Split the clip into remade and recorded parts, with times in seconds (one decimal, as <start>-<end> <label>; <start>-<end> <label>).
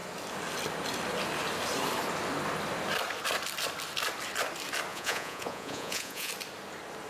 0.0-4.9 recorded; 4.9-6.3 remade; 6.3-7.1 recorded